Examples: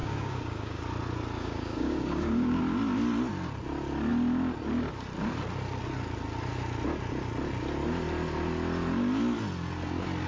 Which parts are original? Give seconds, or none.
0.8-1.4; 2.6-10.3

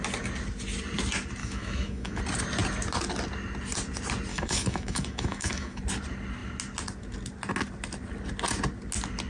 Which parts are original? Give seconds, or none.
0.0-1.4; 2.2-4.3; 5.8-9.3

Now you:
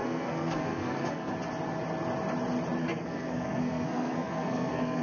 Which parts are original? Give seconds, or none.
1.3-2.8

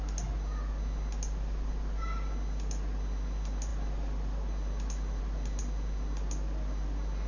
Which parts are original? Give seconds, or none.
0.0-7.3